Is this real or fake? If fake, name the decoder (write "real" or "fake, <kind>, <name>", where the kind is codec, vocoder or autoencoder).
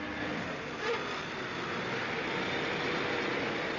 real